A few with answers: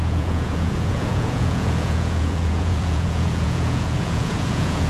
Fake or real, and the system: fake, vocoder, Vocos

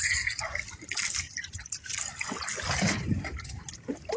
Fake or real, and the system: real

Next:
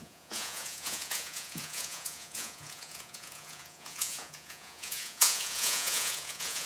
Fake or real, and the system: fake, vocoder, Vocos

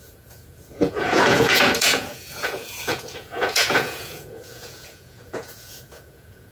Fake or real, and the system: fake, vocoder, Vocos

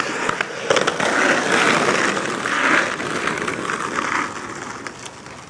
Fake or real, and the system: real